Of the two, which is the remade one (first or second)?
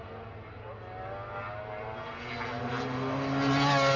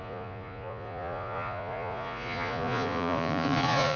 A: second